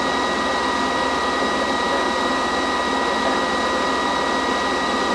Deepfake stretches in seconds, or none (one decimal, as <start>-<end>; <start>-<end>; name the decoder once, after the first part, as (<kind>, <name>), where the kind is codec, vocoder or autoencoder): none